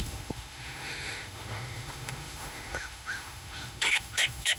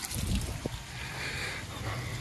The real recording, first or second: second